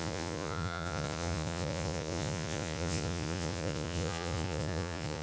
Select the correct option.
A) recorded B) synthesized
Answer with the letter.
B